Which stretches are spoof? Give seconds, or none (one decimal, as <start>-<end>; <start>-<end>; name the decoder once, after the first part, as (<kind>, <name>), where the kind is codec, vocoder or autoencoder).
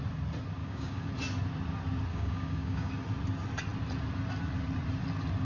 0.6-1.1 (codec, DAC); 2.1-2.9